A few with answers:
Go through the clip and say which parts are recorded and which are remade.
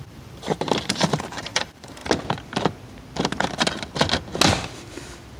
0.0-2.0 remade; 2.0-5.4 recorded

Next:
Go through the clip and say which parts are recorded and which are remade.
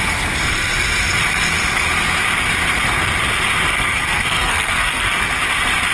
0.0-3.7 recorded; 3.7-5.3 remade; 5.3-5.9 recorded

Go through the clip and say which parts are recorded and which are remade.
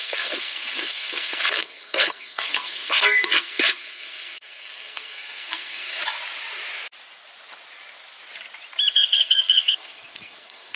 0.0-6.0 remade; 6.0-8.9 recorded; 8.9-10.8 remade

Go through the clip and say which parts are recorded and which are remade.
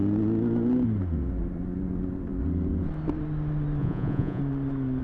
0.0-3.8 recorded; 3.8-4.4 remade; 4.4-5.0 recorded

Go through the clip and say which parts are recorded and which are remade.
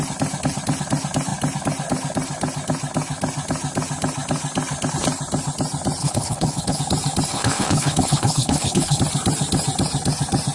0.0-6.0 recorded; 6.0-6.8 remade; 6.8-7.3 recorded; 7.3-9.0 remade; 9.0-10.5 recorded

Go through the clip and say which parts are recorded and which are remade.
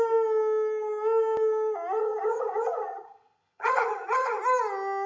0.0-2.0 recorded; 2.0-4.4 remade; 4.4-5.1 recorded